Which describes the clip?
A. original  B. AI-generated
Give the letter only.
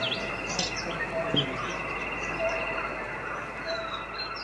A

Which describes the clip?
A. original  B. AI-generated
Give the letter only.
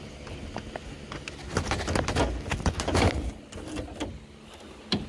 A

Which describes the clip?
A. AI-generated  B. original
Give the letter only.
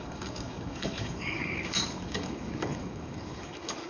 A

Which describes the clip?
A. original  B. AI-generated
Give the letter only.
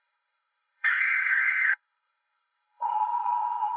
B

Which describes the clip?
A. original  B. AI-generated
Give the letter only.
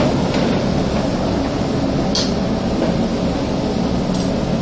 A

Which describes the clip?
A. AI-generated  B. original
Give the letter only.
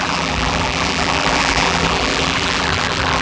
A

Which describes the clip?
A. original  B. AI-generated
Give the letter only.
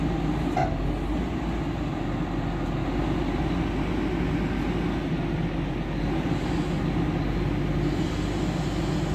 A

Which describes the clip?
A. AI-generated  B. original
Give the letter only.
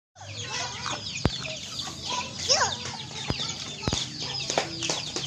A